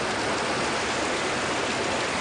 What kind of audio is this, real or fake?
real